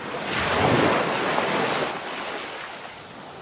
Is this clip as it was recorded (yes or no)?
yes